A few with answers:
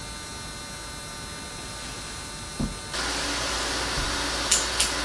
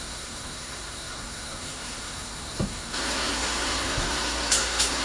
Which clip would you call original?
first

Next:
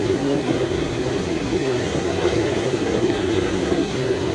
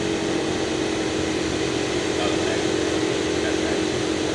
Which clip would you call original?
second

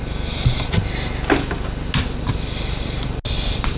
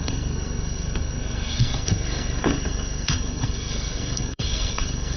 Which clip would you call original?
first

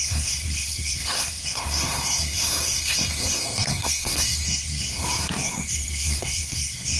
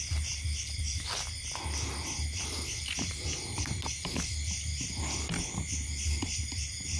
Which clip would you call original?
second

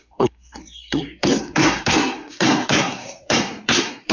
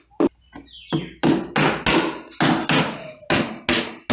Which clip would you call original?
second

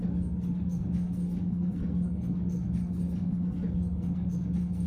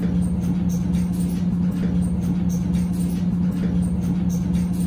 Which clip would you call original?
second